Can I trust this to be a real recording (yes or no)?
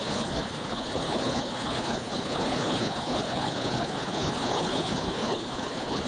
no